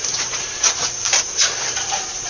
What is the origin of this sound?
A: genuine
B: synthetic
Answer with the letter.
B